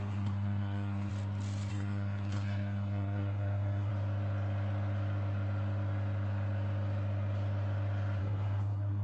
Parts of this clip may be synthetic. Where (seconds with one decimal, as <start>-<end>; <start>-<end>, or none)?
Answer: 0.0-1.1; 1.7-3.9; 8.2-9.0